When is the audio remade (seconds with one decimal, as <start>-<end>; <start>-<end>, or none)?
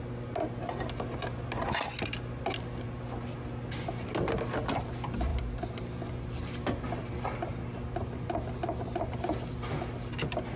none